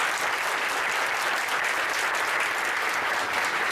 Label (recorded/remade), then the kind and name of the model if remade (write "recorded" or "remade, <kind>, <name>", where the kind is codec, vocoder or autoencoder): recorded